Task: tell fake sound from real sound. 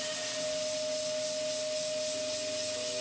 real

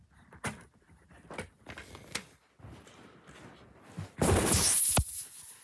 real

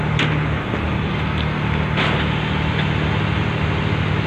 real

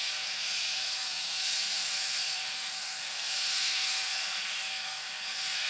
fake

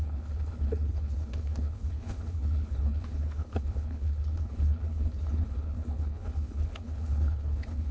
fake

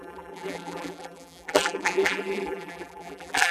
fake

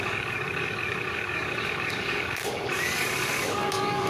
fake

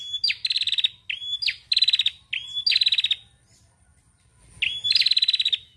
real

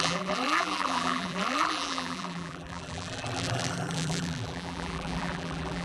fake